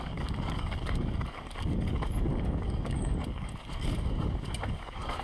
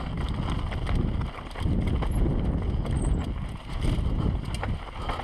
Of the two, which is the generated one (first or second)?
first